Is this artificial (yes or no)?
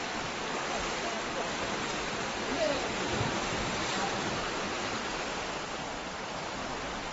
yes